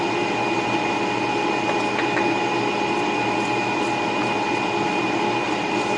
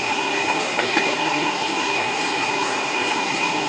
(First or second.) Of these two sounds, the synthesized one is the second